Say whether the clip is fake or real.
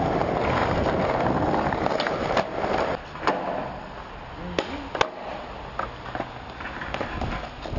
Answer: real